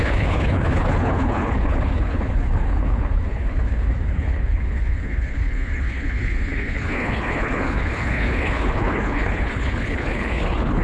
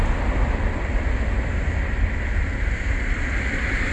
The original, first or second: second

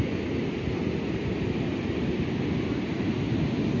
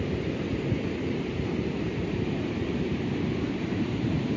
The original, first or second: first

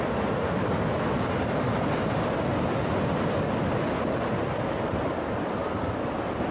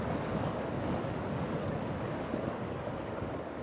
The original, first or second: first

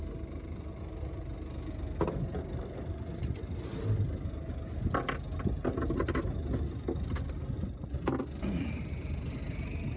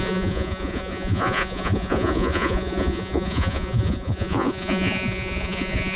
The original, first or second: first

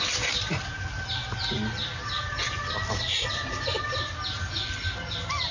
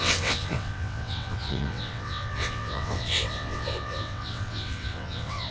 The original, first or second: first